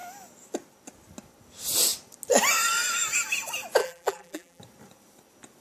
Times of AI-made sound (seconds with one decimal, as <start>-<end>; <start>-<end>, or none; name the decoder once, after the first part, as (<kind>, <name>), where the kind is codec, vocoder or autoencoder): 3.8-4.6 (vocoder, BigVGAN v2)